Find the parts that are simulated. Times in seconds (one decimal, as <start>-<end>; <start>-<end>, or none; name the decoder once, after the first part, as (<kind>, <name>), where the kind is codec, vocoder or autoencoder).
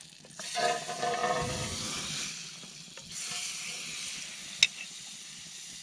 4.7-5.8 (vocoder, BigVGAN v2)